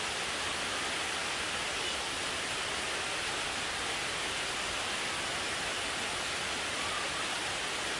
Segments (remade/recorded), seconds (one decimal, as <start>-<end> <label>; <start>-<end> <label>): 0.0-8.0 recorded